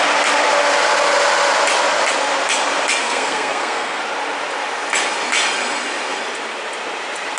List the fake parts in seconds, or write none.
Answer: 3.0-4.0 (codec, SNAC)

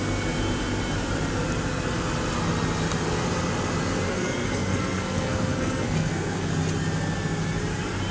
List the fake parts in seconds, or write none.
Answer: 4.1-6.5 (codec, SNAC)

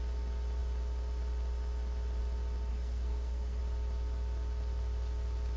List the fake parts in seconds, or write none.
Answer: 2.7-3.6 (codec, SNAC)

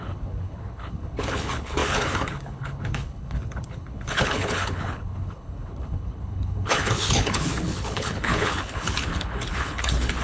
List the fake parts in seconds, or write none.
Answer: 0.0-10.2 (codec, HILCodec)

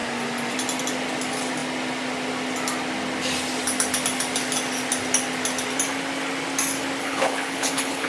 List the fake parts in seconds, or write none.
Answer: 7.0-8.1 (codec, HILCodec)

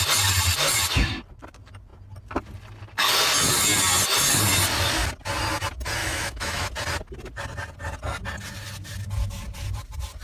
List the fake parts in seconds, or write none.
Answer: 6.0-6.7 (autoencoder, DAC-VAE)

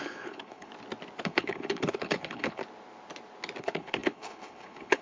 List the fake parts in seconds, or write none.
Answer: 0.0-0.7 (codec, HILCodec); 1.2-2.6; 3.6-5.0